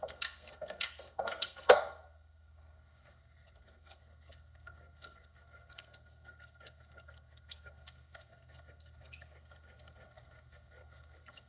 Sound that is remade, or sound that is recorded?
remade